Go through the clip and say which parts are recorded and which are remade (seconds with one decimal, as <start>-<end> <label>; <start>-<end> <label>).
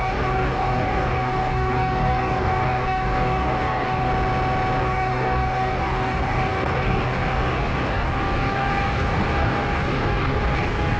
0.0-4.1 remade; 4.1-4.8 recorded; 4.8-11.0 remade